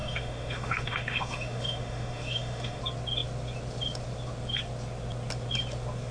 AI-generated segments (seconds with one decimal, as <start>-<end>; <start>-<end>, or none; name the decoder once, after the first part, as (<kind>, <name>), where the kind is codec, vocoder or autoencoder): 0.0-2.8 (autoencoder, DAC-VAE)